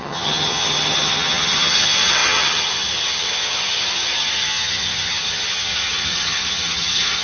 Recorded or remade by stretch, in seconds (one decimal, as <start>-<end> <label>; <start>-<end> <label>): 0.0-7.2 remade